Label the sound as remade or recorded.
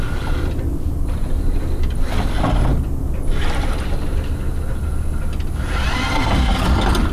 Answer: recorded